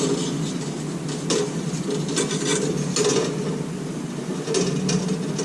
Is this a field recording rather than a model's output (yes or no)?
yes